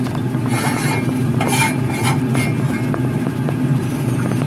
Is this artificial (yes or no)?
no